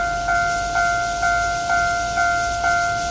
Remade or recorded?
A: recorded